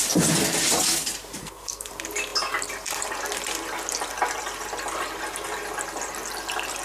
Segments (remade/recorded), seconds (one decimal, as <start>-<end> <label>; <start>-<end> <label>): 0.0-1.4 recorded; 1.4-1.9 remade; 1.9-6.8 recorded